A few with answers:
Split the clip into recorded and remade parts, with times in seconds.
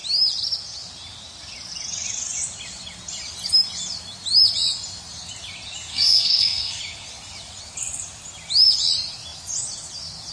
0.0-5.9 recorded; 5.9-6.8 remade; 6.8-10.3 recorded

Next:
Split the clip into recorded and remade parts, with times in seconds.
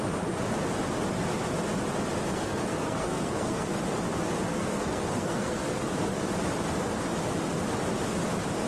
0.0-2.3 recorded; 2.3-3.8 remade; 3.8-4.5 recorded; 4.5-5.8 remade; 5.8-8.7 recorded